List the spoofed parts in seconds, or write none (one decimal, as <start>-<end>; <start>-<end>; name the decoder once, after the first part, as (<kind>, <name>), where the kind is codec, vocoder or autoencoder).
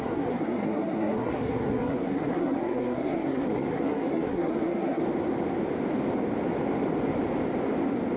0.0-5.0 (codec, SNAC)